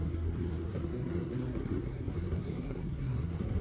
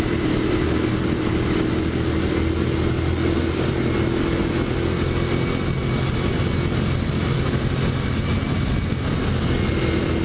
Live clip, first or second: second